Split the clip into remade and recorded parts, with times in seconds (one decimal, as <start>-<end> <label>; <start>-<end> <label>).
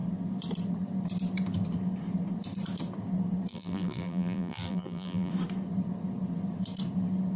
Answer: 0.0-3.5 recorded; 3.5-5.3 remade; 5.3-7.4 recorded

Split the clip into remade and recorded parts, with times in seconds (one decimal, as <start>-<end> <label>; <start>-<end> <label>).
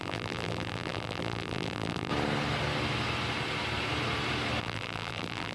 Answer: 0.0-2.1 remade; 2.1-4.6 recorded; 4.6-5.5 remade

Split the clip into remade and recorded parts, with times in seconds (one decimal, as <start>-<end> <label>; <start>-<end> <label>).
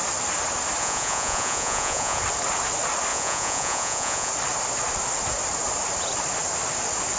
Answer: 0.0-0.8 recorded; 0.8-2.2 remade; 2.2-3.1 recorded; 3.1-4.3 remade; 4.3-7.2 recorded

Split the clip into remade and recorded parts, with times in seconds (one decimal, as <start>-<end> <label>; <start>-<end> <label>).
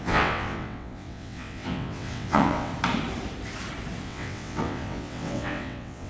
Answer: 0.0-2.7 remade; 2.7-4.0 recorded; 4.0-6.1 remade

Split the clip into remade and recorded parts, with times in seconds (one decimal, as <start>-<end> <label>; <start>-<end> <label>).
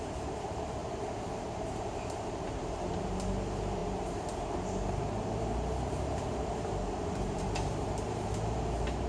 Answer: 0.0-9.1 remade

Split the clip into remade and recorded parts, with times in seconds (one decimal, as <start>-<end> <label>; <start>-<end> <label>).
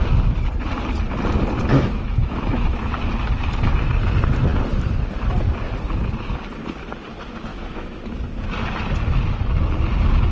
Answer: 0.0-1.7 recorded; 1.7-2.9 remade; 2.9-7.5 recorded; 7.5-8.1 remade; 8.1-10.3 recorded